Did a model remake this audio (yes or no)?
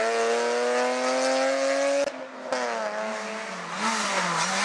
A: no